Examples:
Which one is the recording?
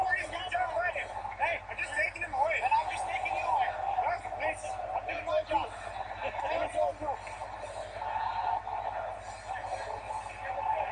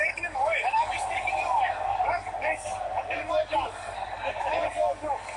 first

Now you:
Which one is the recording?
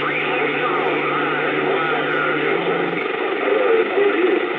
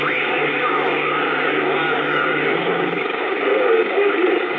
first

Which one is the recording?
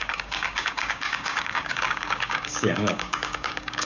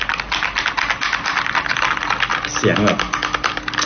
second